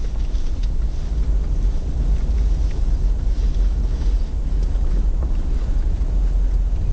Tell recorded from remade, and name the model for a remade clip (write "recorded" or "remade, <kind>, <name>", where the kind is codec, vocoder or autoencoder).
recorded